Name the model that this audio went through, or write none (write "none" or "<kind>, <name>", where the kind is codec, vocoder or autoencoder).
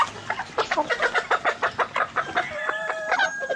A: none